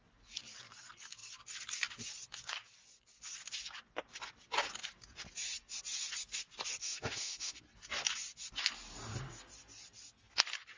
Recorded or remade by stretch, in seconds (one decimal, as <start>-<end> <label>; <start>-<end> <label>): 0.0-6.8 recorded; 6.8-7.6 remade; 7.6-10.8 recorded